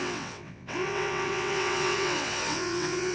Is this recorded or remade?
remade